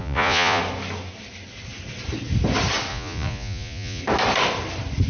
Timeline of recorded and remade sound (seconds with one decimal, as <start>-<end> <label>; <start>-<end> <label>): 0.0-0.6 remade; 0.6-2.9 recorded; 2.9-4.0 remade; 4.0-5.1 recorded